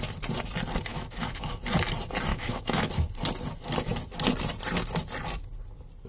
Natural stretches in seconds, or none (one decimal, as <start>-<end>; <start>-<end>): 0.0-0.9; 1.6-2.3; 2.9-6.1